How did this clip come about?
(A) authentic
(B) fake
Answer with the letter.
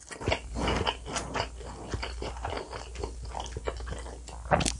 A